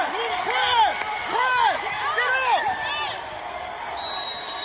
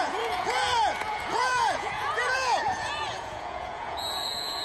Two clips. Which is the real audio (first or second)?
first